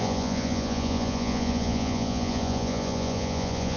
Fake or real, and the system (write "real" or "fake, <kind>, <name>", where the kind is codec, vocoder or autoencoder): fake, vocoder, Vocos